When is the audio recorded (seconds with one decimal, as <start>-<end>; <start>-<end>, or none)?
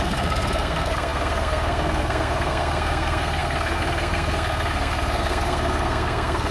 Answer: none